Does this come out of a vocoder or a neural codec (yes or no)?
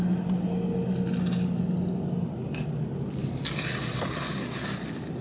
no